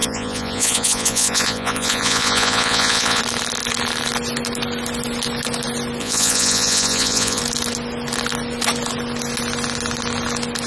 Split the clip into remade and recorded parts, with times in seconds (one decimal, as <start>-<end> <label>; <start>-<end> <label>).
0.0-3.2 remade; 3.2-6.0 recorded; 6.0-7.4 remade; 7.4-10.7 recorded